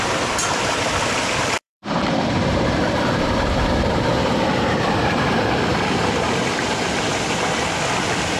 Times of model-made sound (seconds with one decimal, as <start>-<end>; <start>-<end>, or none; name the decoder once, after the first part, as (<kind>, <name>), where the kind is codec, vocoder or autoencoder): 1.6-5.3 (vocoder, BigVGAN v2)